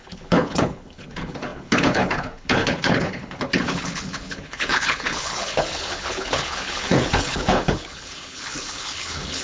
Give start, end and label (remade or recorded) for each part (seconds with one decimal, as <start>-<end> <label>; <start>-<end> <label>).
0.0-9.4 remade